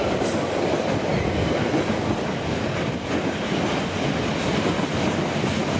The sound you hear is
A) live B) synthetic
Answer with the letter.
A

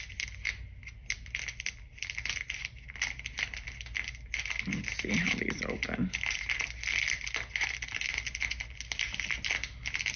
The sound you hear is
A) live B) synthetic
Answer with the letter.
A